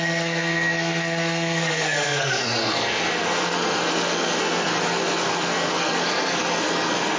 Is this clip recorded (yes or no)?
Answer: no